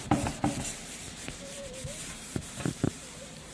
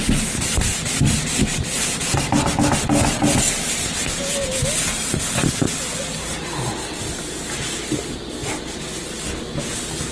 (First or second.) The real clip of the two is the second